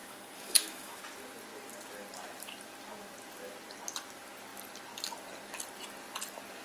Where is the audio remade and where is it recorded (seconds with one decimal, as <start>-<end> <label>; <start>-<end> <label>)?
0.0-1.0 remade; 1.0-6.6 recorded